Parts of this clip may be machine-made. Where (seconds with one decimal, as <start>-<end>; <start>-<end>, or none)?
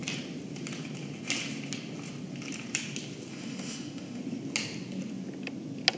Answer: 3.3-4.2